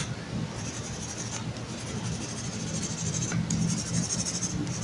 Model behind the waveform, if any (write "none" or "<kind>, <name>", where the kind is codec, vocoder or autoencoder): none